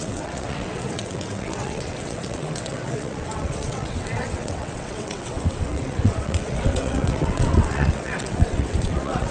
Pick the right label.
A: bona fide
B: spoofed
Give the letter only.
B